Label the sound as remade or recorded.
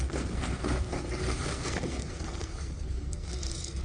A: remade